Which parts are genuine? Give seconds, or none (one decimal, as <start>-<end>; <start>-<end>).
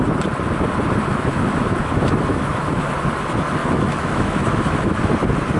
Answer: 0.0-1.1; 2.9-3.6; 5.1-5.6